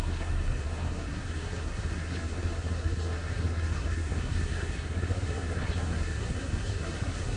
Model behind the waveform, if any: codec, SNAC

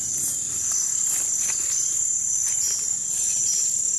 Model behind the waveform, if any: none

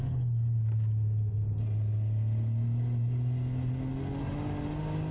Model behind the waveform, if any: none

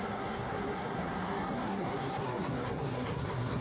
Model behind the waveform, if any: codec, SNAC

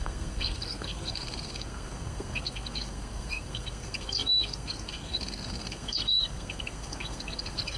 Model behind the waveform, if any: codec, SNAC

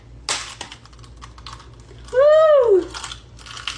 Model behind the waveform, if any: none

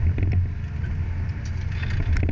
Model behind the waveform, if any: none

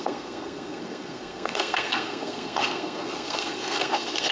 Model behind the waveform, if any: codec, SNAC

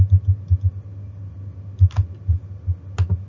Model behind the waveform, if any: none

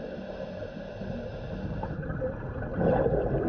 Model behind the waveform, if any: none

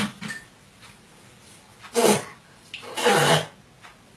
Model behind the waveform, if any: none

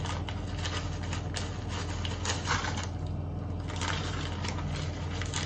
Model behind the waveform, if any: none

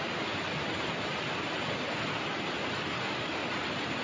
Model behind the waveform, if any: none